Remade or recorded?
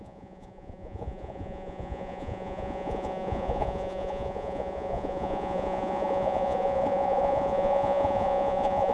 remade